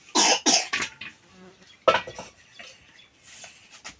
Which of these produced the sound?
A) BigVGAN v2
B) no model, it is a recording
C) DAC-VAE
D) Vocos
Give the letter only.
B